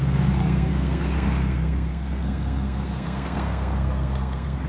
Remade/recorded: remade